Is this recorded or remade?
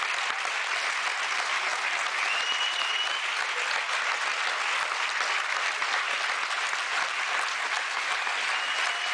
recorded